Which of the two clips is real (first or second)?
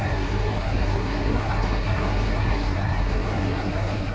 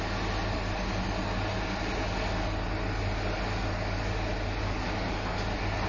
second